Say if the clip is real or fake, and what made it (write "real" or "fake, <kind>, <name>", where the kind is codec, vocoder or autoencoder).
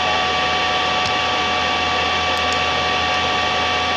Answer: real